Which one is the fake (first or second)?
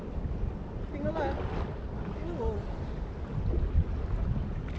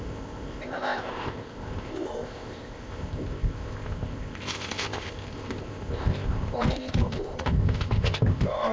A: second